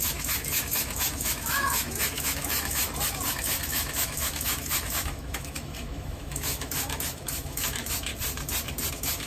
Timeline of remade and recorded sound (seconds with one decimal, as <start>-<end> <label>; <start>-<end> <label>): 0.0-2.8 remade; 2.8-3.3 recorded; 3.3-8.1 remade; 8.1-8.9 recorded; 8.9-9.3 remade